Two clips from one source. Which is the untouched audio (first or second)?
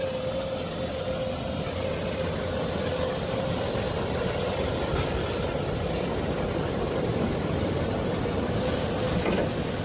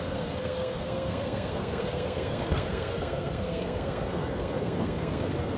first